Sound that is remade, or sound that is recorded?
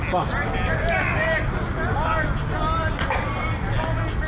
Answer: recorded